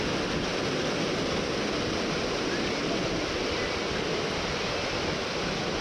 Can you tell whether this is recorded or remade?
recorded